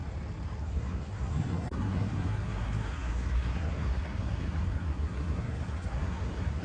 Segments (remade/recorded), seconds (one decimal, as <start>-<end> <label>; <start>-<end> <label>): 0.0-0.6 recorded; 0.6-6.6 remade